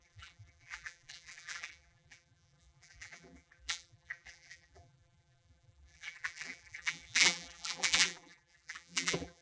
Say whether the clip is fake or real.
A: fake